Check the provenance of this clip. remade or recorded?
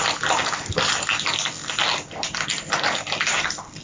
recorded